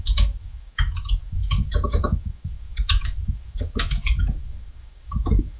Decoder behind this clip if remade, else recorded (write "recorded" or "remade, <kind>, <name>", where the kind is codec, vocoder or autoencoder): remade, autoencoder, DAC-VAE